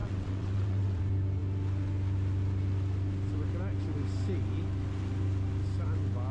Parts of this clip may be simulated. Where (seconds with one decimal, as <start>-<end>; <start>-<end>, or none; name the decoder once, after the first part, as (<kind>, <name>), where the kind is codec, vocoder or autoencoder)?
0.0-1.0 (vocoder, WaveNeXt)